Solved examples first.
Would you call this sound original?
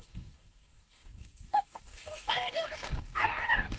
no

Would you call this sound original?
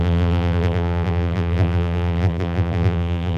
no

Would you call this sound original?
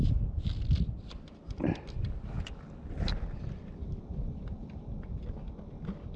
yes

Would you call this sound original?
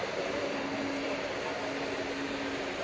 yes